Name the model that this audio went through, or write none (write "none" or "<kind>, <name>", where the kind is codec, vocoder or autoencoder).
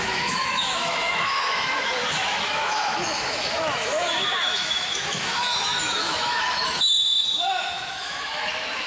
autoencoder, DAC-VAE